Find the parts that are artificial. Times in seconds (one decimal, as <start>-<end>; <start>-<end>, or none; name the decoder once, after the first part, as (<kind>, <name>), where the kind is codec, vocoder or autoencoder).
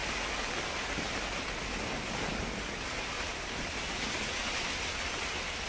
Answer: none